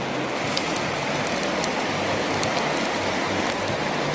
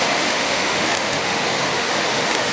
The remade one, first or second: second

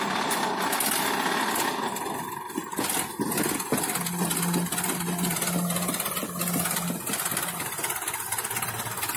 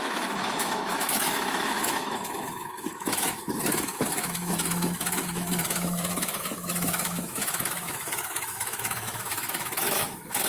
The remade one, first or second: second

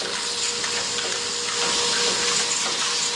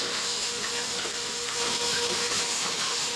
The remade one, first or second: second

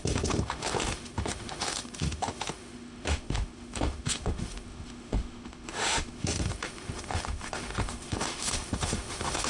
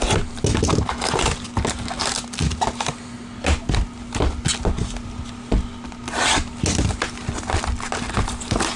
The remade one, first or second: first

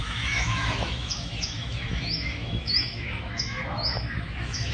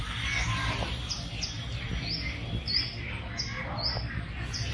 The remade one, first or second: first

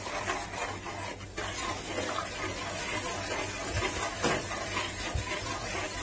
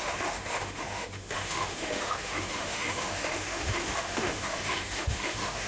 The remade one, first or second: second